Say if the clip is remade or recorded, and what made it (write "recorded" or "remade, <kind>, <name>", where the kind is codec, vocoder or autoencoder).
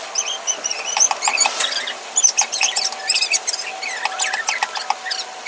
recorded